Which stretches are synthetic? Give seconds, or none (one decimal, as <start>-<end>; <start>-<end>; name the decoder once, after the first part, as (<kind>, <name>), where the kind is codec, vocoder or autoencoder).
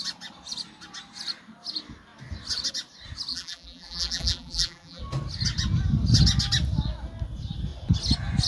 3.3-5.0 (vocoder, BigVGAN v2)